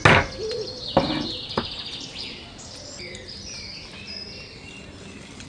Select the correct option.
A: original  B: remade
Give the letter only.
A